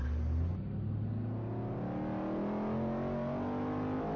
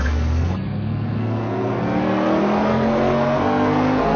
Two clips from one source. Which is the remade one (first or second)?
second